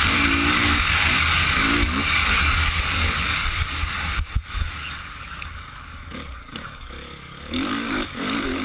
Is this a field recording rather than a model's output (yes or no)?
no